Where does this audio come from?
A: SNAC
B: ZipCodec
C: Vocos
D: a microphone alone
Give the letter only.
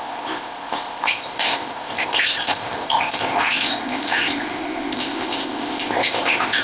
B